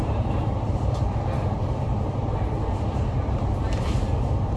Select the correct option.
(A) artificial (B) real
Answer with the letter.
A